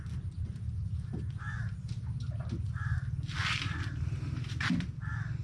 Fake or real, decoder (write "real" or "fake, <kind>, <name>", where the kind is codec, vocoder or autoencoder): real